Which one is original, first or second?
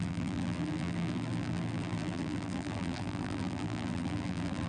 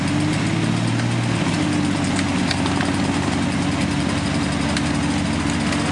second